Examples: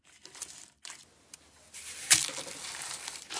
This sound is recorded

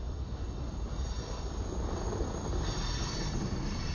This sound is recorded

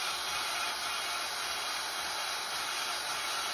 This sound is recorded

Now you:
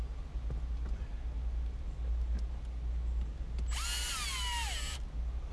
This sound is recorded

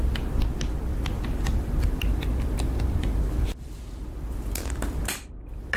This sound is recorded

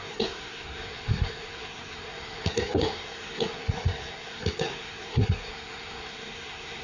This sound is remade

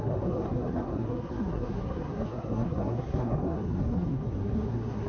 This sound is remade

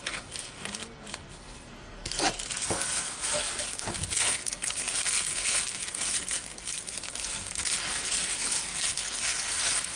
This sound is remade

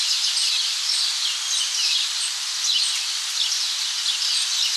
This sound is recorded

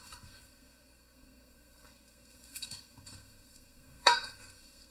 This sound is remade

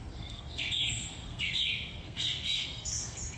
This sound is remade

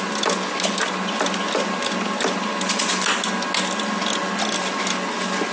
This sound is recorded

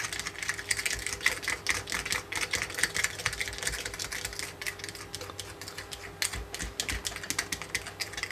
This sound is recorded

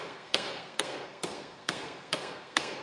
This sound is remade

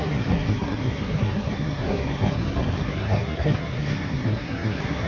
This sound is remade